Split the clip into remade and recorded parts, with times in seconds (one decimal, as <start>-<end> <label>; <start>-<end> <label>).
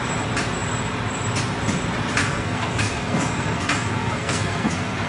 0.0-2.2 recorded; 2.2-5.1 remade